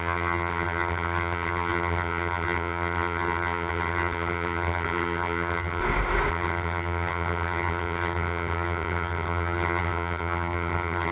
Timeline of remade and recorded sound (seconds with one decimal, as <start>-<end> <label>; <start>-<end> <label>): 0.0-5.8 remade; 5.8-6.3 recorded; 6.3-11.1 remade